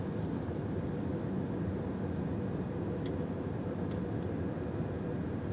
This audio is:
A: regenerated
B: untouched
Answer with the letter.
B